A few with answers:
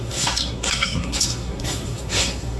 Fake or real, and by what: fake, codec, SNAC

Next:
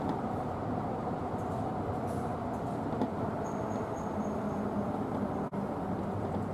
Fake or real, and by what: fake, vocoder, BigVGAN v2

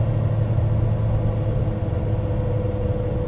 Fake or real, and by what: real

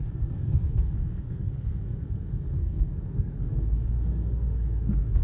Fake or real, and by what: fake, codec, SNAC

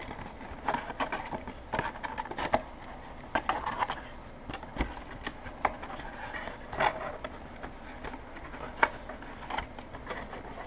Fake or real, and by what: real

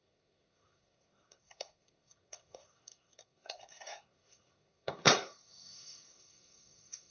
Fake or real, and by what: fake, codec, SNAC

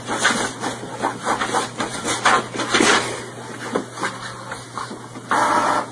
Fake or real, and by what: real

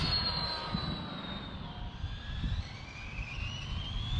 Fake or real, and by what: fake, vocoder, BigVGAN v2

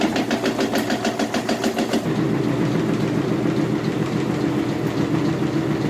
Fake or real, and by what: real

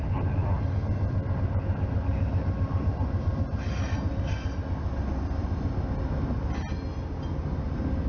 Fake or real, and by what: real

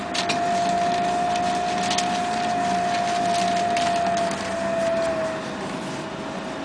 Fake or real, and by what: real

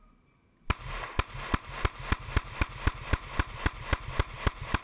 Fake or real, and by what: real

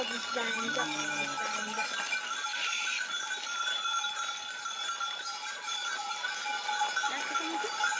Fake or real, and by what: real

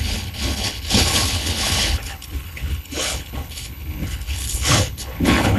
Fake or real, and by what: fake, codec, HILCodec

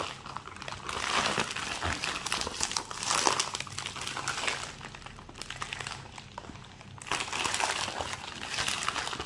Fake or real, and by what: real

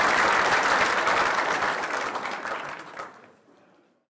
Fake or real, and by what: real